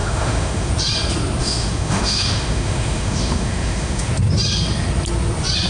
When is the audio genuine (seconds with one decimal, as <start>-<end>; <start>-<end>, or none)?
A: 0.7-1.4; 4.1-5.7